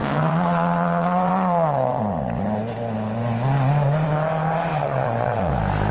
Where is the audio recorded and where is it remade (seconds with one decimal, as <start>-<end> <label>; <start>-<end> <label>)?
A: 0.0-2.0 remade; 2.0-4.7 recorded; 4.7-5.5 remade; 5.5-5.9 recorded